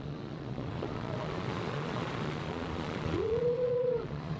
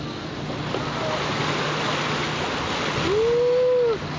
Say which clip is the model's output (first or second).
first